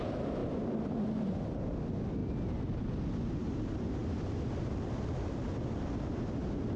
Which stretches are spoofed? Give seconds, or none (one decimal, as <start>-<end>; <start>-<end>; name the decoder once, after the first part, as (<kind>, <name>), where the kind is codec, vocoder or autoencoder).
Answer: 0.4-1.3 (vocoder, BigVGAN v2); 4.0-5.8